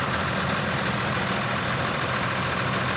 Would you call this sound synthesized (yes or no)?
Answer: yes